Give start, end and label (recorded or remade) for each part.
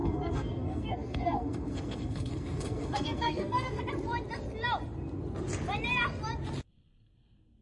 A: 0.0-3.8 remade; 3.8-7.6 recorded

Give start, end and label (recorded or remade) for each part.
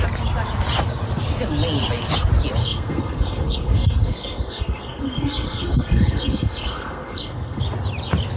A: 0.0-2.6 recorded; 2.6-7.6 remade; 7.6-8.4 recorded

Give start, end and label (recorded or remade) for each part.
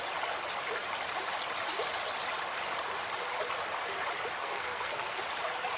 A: 0.0-4.4 recorded; 4.4-5.2 remade; 5.2-5.8 recorded